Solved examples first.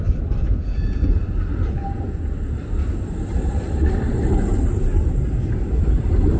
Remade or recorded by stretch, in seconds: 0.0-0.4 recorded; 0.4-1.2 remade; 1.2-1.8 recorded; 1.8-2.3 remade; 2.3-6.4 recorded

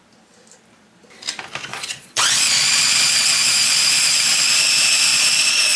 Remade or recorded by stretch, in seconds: 0.0-1.7 recorded; 1.7-4.2 remade; 4.2-5.1 recorded; 5.1-5.8 remade

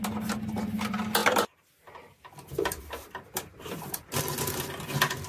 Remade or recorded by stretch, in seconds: 0.0-5.3 recorded

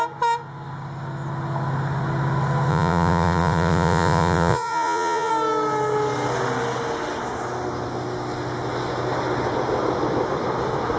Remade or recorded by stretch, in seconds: 0.0-2.7 recorded; 2.7-5.3 remade; 5.3-11.0 recorded

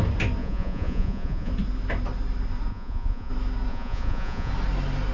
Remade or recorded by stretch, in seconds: 0.0-0.4 recorded; 0.4-1.5 remade; 1.5-2.7 recorded; 2.7-3.3 remade; 3.3-3.7 recorded; 3.7-4.5 remade; 4.5-5.1 recorded